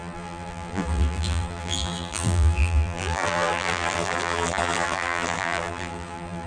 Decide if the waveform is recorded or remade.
remade